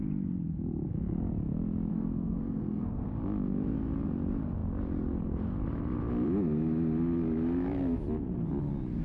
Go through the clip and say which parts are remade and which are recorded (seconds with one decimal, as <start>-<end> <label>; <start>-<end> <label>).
0.0-1.9 recorded; 1.9-3.1 remade; 3.1-9.0 recorded